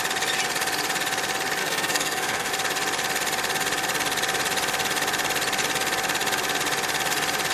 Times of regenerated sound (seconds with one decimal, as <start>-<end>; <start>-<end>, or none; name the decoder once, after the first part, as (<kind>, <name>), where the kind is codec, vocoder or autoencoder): 1.6-2.5 (codec, SNAC)